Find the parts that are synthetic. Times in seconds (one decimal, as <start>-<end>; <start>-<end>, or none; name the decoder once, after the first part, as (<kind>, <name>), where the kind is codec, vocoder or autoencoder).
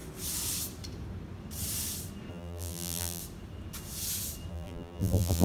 2.3-3.2 (vocoder, BigVGAN v2); 4.5-5.4